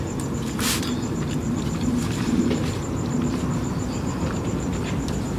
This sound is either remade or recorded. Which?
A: recorded